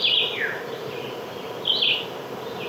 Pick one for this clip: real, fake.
real